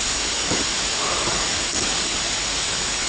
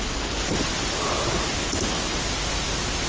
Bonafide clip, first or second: second